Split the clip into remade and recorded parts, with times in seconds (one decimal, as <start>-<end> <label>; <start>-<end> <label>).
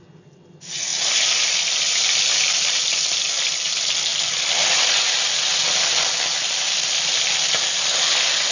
0.0-8.5 recorded